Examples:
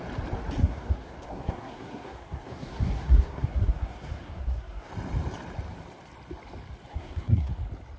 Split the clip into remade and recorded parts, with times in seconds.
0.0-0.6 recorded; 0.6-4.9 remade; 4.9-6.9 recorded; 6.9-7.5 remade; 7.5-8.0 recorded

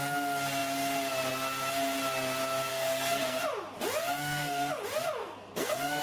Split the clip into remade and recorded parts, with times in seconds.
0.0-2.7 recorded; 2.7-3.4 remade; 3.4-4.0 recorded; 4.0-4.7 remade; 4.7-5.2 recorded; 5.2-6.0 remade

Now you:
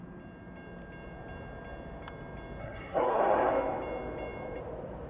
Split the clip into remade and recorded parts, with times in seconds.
0.0-2.6 recorded; 2.6-3.5 remade; 3.5-5.1 recorded

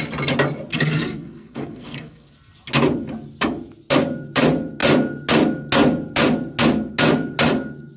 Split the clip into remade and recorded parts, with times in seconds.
0.0-0.7 recorded; 0.7-2.3 remade; 2.3-8.0 recorded

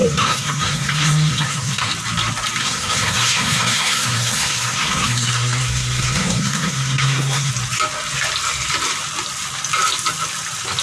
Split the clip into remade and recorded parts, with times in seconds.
0.0-1.9 remade; 1.9-2.6 recorded; 2.6-7.5 remade; 7.5-10.8 recorded